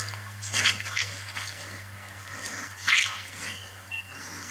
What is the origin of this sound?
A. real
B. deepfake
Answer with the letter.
B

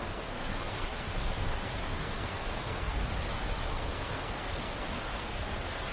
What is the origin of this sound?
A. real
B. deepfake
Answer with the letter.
B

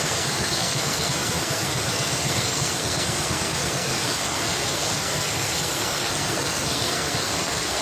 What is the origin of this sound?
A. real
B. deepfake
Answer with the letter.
B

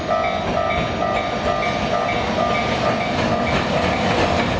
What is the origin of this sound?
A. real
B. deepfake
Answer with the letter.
A